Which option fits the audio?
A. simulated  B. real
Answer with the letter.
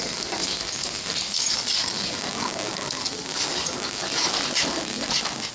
B